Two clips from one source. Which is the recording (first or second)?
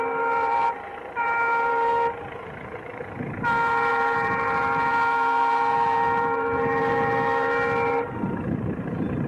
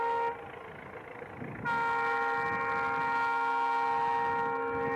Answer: second